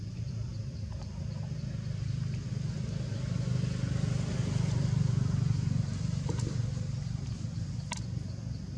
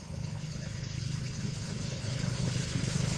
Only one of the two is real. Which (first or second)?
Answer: first